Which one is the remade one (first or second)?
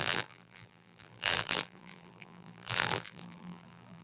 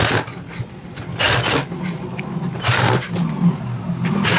first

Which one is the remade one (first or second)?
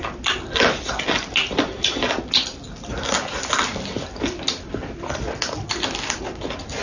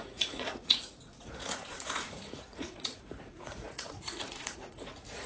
second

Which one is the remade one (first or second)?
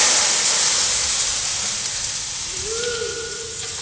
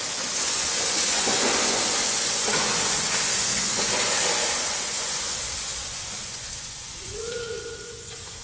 second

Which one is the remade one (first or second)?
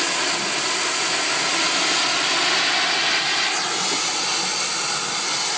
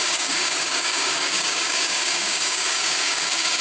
second